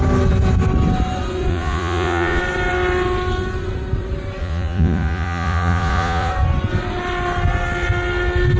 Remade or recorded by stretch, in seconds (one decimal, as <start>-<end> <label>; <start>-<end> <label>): 0.0-1.5 recorded; 1.5-2.4 remade; 2.4-4.4 recorded; 4.4-6.3 remade; 6.3-8.6 recorded